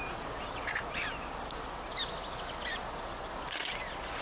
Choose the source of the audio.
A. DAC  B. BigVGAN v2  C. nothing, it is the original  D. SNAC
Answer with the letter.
C